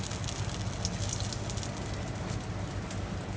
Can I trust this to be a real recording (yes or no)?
yes